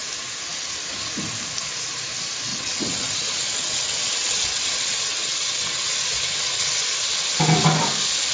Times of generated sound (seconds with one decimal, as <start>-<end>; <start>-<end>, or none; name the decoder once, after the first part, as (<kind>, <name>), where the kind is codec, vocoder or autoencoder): 2.5-7.0 (vocoder, WaveNeXt)